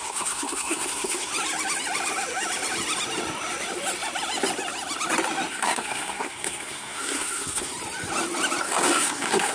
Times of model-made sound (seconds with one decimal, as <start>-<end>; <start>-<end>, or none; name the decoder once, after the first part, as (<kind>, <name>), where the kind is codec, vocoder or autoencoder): 0.0-1.3 (codec, SNAC); 5.5-7.7; 8.6-9.5